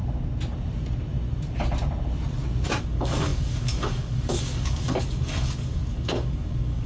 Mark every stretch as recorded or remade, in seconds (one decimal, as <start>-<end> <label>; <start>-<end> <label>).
0.0-2.8 recorded; 2.8-6.9 remade

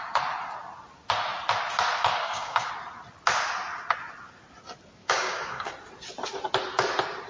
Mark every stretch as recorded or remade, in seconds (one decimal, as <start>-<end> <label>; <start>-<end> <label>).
0.0-2.2 recorded; 2.2-2.7 remade; 2.7-5.0 recorded; 5.0-5.7 remade; 5.7-7.3 recorded

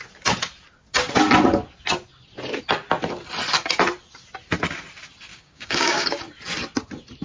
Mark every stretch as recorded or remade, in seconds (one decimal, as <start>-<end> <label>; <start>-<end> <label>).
0.0-5.3 recorded; 5.3-6.2 remade; 6.2-7.2 recorded

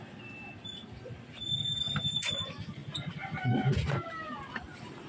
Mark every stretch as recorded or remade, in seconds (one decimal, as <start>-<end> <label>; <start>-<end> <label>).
0.0-5.1 recorded

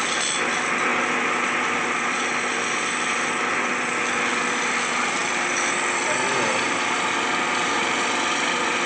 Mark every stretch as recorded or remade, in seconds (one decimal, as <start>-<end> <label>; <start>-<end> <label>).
0.0-8.9 recorded

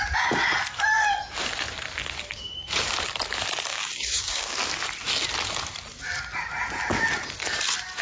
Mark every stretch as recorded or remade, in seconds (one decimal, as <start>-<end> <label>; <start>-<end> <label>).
0.0-3.7 recorded; 3.7-4.6 remade; 4.6-8.0 recorded

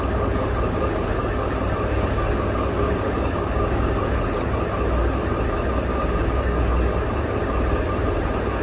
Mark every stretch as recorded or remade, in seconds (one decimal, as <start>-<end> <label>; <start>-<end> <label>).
0.0-1.9 recorded; 1.9-4.2 remade; 4.2-5.9 recorded; 5.9-6.6 remade; 6.6-8.6 recorded

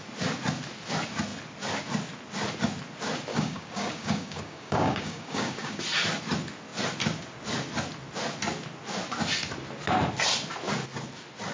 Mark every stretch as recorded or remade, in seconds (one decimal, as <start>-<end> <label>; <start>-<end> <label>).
0.0-3.3 recorded; 3.3-5.8 remade; 5.8-11.5 recorded